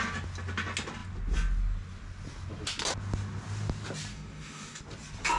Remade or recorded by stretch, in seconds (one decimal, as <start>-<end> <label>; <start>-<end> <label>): 0.0-4.1 recorded; 4.1-4.8 remade; 4.8-5.4 recorded